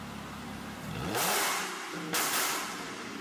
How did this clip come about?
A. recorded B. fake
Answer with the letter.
A